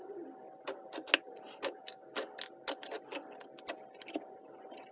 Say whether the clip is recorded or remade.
recorded